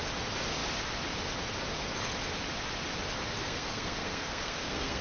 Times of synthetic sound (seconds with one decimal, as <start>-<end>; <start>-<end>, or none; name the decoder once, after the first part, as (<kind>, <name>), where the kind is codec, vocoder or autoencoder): 3.2-5.0 (codec, SNAC)

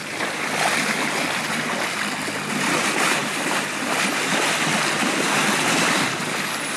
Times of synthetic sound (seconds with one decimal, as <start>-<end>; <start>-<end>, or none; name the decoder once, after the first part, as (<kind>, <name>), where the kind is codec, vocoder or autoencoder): none

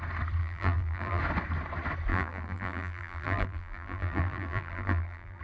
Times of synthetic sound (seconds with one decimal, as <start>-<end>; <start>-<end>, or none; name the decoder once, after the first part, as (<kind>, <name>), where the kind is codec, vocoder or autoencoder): 0.4-1.2 (vocoder, BigVGAN v2); 2.1-5.4

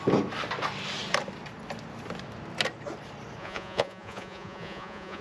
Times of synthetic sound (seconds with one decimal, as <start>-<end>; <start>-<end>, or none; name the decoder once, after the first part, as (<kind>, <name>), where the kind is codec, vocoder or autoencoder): 3.4-5.2 (vocoder, Vocos)

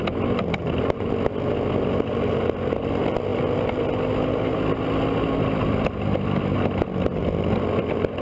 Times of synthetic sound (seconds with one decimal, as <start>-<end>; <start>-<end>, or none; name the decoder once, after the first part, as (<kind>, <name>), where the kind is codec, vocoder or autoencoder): none

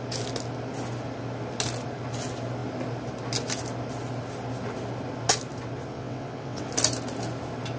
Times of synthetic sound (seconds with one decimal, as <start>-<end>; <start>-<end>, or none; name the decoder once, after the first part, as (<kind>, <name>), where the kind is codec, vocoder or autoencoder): 5.9-6.7 (vocoder, WaveNeXt)